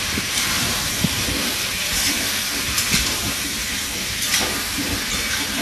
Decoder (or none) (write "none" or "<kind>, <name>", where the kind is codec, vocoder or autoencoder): vocoder, BigVGAN v2